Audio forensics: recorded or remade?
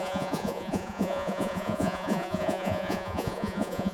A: remade